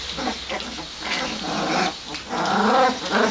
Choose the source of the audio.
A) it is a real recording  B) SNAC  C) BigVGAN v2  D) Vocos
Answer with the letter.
A